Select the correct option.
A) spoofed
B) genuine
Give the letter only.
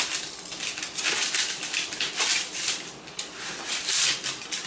B